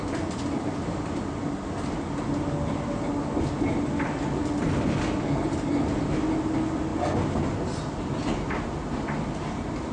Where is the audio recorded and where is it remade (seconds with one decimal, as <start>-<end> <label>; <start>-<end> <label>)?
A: 0.0-9.9 recorded